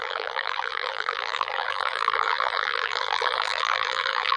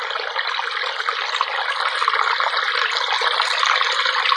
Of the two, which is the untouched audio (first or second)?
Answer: second